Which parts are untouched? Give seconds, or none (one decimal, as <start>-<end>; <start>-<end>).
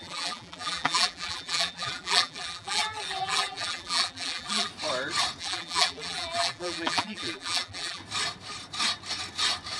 4.7-5.4; 8.0-9.8